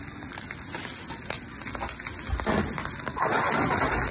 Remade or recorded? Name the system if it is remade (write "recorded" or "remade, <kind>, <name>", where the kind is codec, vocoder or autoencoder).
recorded